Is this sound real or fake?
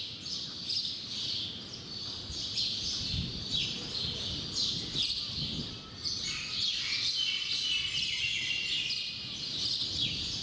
real